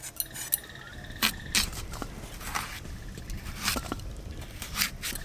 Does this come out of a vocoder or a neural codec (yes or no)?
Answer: no